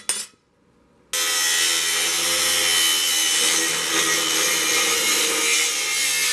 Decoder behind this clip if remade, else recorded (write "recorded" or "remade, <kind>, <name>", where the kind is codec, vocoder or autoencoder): recorded